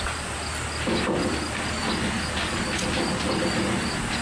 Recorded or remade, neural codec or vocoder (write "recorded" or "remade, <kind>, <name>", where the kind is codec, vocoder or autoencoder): recorded